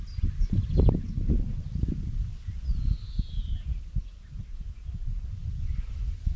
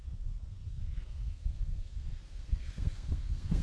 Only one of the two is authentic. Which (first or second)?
first